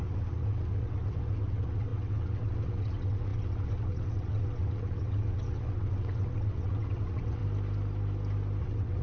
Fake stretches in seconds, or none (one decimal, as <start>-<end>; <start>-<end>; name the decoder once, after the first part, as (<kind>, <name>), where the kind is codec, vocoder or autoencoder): 0.0-7.4 (vocoder, WaveNeXt); 8.6-9.0